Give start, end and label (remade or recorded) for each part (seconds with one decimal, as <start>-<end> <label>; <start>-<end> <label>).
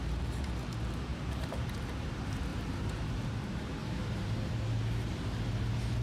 0.0-1.1 recorded; 1.1-1.7 remade; 1.7-2.5 recorded; 2.5-3.3 remade; 3.3-3.8 recorded; 3.8-4.5 remade; 4.5-6.0 recorded